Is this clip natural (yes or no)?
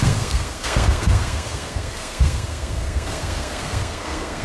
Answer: no